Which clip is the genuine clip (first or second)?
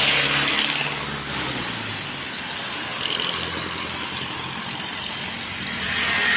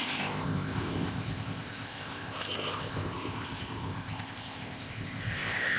first